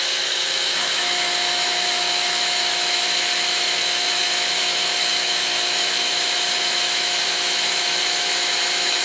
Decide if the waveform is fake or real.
fake